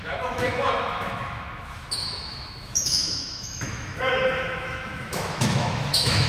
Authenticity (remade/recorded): remade